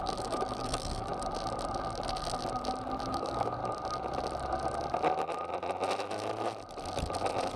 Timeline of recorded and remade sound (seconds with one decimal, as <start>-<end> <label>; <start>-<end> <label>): 0.0-1.1 remade; 1.1-3.1 recorded; 3.1-3.6 remade; 3.6-7.6 recorded